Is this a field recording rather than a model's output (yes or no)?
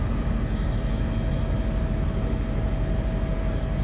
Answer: yes